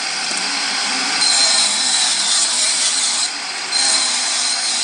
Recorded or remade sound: remade